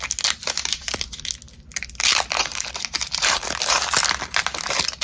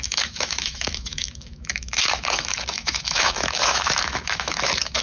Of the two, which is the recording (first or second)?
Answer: first